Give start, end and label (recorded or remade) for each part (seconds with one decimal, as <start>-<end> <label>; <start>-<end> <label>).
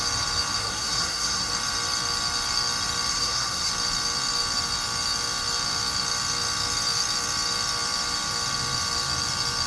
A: 0.0-0.6 recorded; 0.6-1.5 remade; 1.5-3.1 recorded; 3.1-3.7 remade; 3.7-9.7 recorded